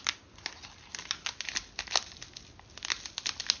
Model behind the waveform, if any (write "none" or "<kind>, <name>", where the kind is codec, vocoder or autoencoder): none